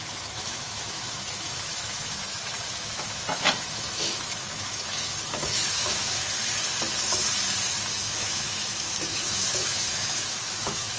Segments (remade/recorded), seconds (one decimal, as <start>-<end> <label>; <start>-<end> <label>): 0.0-6.2 remade; 6.2-7.7 recorded; 7.7-11.0 remade